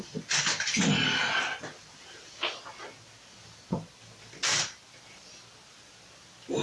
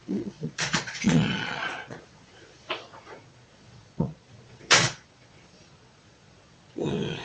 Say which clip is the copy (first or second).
second